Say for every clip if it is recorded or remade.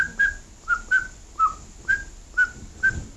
recorded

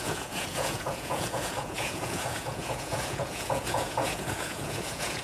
remade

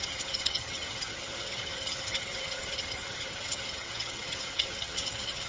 remade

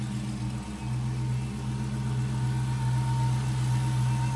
recorded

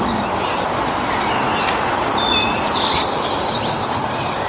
recorded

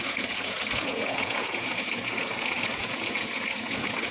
remade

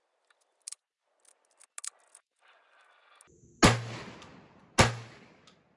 recorded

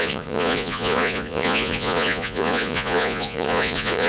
remade